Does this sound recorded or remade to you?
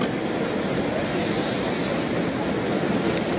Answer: recorded